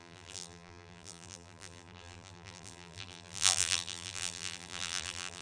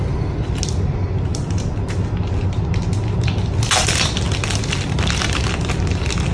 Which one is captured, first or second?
second